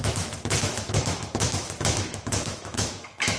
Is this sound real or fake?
fake